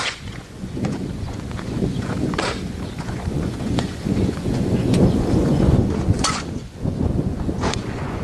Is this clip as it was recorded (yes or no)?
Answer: no